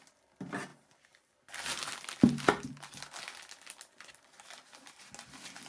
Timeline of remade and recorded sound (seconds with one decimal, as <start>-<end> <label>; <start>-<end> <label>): 0.0-5.7 recorded